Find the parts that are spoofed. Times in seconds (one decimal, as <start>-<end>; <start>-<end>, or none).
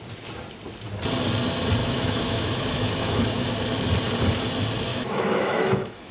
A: 1.8-3.5; 4.9-6.1